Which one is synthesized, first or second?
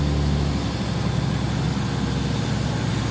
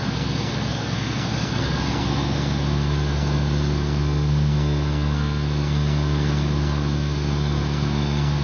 second